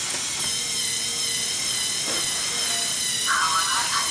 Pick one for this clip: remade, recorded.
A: recorded